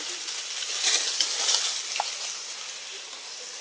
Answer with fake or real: real